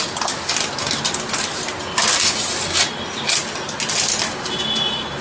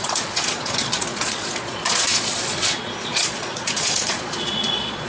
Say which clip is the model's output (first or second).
second